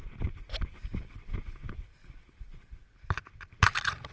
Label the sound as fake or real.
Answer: real